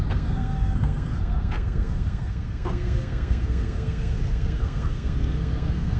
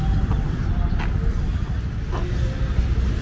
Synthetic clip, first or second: first